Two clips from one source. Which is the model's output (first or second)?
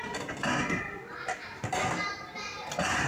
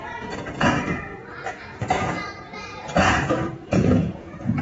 second